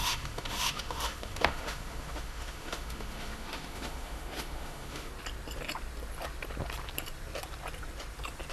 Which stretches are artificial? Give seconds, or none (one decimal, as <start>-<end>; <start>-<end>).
0.0-5.1